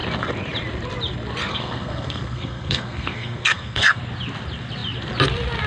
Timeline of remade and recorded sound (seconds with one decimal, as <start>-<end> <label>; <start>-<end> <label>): 0.0-1.5 recorded; 1.5-4.0 remade; 4.0-5.7 recorded